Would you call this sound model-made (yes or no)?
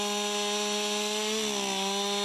no